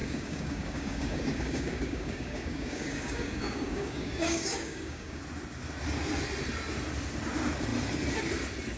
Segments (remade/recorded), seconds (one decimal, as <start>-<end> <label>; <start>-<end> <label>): 0.0-5.2 remade; 5.2-8.8 recorded